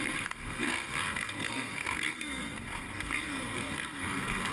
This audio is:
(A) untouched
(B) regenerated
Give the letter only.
B